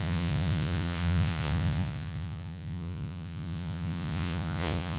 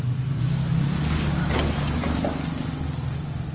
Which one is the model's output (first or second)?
first